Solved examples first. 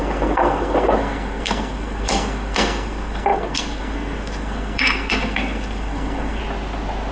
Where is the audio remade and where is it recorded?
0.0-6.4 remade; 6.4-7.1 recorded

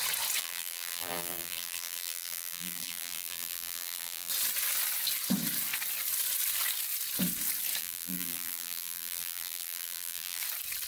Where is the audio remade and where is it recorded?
0.0-0.4 recorded; 0.4-4.3 remade; 4.3-7.8 recorded; 7.8-10.4 remade; 10.4-10.9 recorded

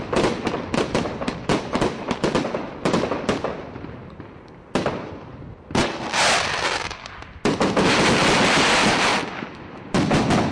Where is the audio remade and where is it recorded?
0.0-10.5 recorded

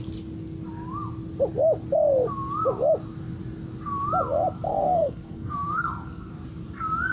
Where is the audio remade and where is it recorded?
0.0-4.7 recorded; 4.7-6.3 remade; 6.3-7.1 recorded

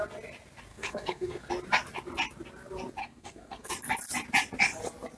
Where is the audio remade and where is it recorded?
0.0-0.7 recorded; 0.7-1.5 remade; 1.5-3.0 recorded; 3.0-3.7 remade; 3.7-5.2 recorded

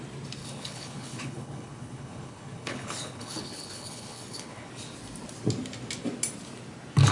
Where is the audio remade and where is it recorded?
0.0-0.4 recorded; 0.4-4.7 remade; 4.7-7.1 recorded

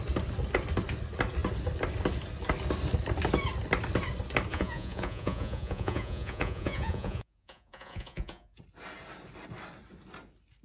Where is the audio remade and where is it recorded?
0.0-4.5 recorded; 4.5-8.6 remade; 8.6-10.6 recorded